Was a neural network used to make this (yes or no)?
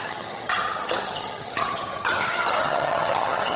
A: yes